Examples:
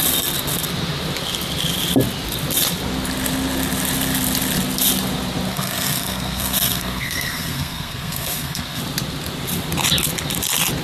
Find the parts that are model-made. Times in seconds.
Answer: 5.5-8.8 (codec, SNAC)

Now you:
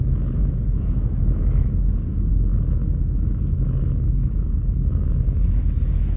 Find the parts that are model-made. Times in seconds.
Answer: 0.0-6.2 (autoencoder, DAC-VAE)